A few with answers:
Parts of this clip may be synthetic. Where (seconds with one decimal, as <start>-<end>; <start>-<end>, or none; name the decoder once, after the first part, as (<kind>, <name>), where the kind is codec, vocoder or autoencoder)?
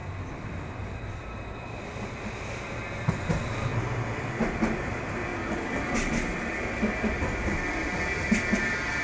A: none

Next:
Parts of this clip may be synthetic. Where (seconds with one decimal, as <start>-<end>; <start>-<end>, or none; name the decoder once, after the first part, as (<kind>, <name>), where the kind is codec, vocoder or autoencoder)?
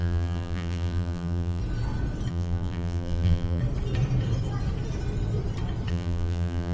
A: 0.0-1.6 (vocoder, BigVGAN v2); 2.3-3.6; 5.9-6.7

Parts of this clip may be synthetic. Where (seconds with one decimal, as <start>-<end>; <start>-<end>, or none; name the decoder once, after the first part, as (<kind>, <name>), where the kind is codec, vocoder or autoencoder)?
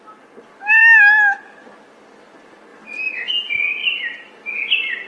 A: 3.8-4.3 (vocoder, BigVGAN v2)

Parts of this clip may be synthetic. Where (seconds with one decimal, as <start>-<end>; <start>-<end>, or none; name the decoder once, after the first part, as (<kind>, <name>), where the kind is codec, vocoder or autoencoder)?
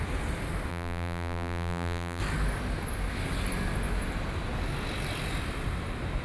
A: 0.7-2.2 (vocoder, BigVGAN v2)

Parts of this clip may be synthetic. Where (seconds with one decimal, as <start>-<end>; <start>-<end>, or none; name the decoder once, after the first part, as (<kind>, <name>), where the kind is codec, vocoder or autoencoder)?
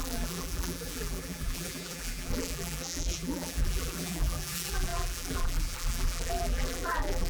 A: 0.0-7.3 (vocoder, BigVGAN v2)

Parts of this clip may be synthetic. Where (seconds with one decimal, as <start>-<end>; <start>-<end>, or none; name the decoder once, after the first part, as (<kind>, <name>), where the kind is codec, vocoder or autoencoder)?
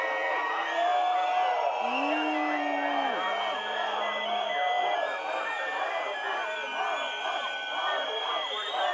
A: 0.0-0.9 (vocoder, BigVGAN v2); 4.8-6.7; 7.2-8.9